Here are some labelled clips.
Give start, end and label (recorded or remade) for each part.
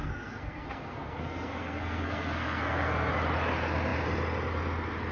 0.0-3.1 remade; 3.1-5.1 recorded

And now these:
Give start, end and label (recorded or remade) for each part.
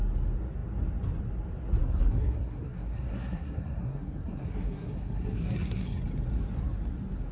0.0-1.8 recorded; 1.8-6.0 remade; 6.0-7.3 recorded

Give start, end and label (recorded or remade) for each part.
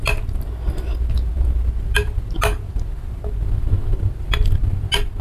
0.0-5.2 recorded